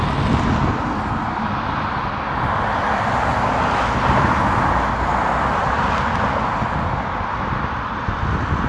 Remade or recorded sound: recorded